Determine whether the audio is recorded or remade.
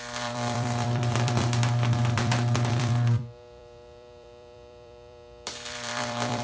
remade